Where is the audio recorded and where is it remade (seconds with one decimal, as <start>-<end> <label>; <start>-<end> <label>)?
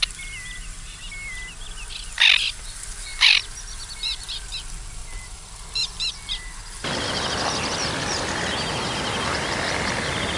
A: 0.0-3.1 recorded; 3.1-4.4 remade; 4.4-5.0 recorded; 5.0-8.3 remade; 8.3-10.4 recorded